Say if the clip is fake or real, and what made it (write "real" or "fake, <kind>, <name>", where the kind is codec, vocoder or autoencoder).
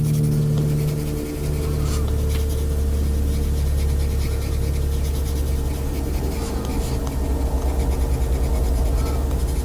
real